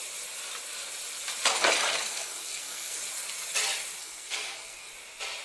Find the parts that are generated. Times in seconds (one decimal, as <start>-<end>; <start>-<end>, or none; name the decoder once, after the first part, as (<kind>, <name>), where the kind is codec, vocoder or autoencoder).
2.1-3.0 (codec, SNAC); 4.0-4.9